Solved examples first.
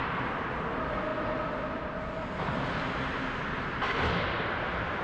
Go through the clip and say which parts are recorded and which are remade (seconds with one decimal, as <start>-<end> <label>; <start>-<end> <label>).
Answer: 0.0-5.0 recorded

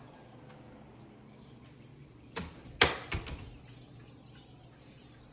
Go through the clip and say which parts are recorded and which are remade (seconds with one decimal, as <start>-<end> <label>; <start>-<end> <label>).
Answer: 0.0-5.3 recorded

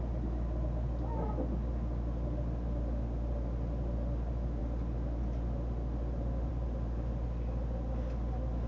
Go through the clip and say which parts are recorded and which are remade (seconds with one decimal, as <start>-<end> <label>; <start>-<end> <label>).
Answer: 0.0-8.7 recorded